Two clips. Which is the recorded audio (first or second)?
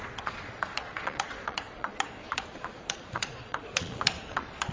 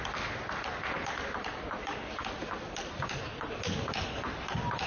second